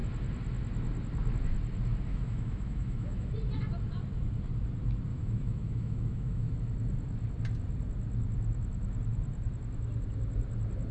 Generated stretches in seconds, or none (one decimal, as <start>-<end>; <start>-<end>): 2.1-3.3; 5.1-6.5